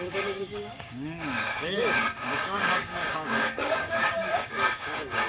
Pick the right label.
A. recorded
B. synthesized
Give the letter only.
B